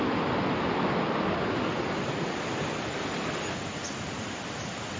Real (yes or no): yes